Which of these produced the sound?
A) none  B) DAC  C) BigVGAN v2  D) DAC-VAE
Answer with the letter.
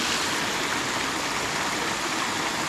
A